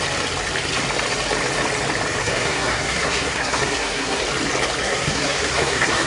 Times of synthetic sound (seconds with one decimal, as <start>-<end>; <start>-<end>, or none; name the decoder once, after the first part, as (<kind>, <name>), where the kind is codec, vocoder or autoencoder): 2.2-4.2 (codec, SNAC); 4.8-6.1